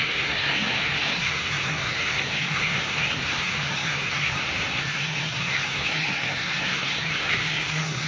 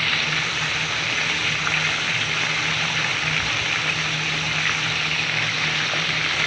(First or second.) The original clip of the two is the second